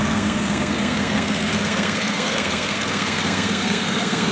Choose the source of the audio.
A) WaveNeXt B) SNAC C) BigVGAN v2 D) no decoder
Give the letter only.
B